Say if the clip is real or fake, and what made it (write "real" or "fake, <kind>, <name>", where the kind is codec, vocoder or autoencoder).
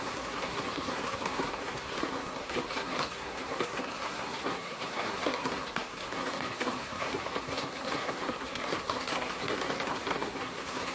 fake, codec, SNAC